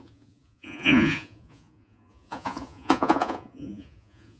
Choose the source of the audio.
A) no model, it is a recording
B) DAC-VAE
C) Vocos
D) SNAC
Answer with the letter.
C